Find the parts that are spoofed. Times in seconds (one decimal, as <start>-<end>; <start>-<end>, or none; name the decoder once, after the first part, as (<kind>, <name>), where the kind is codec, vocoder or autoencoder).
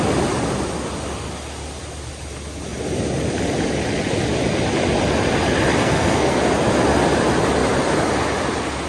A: 5.8-6.4 (codec, SNAC)